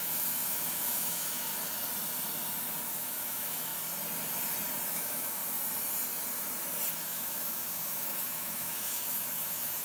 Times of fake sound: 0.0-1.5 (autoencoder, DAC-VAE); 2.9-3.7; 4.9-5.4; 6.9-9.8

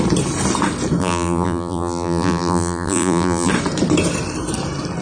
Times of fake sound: 1.0-3.5 (vocoder, BigVGAN v2)

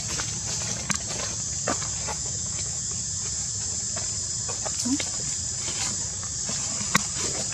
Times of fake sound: 2.1-2.8 (autoencoder, DAC-VAE)

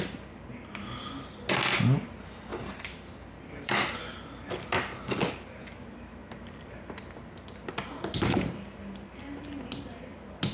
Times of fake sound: 2.5-4.6 (vocoder, BigVGAN v2)